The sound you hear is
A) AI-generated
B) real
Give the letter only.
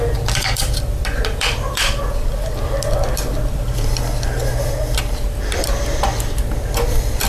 A